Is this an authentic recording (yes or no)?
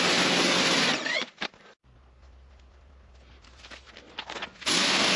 yes